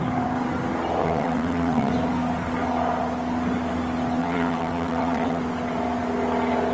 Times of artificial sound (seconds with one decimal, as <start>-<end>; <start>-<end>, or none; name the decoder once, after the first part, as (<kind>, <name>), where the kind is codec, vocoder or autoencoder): 1.0-1.9 (vocoder, WaveNeXt); 4.2-5.4